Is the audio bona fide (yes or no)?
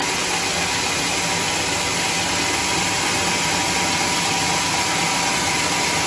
yes